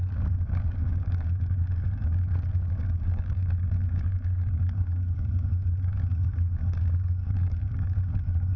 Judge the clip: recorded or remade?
remade